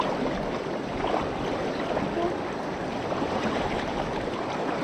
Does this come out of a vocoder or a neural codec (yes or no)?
no